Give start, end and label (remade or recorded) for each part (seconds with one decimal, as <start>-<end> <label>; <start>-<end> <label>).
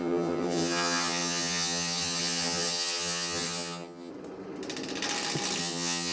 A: 0.0-4.1 remade; 4.1-5.6 recorded; 5.6-6.1 remade